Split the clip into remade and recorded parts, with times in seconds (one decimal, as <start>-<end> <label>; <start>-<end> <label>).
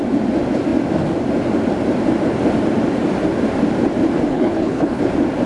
0.0-4.3 recorded; 4.3-5.0 remade; 5.0-5.5 recorded